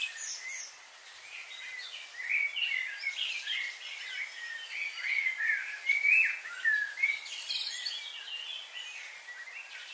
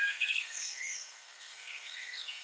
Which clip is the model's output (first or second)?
second